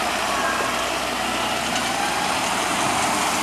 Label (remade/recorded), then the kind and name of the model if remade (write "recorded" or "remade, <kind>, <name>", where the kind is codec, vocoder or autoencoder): recorded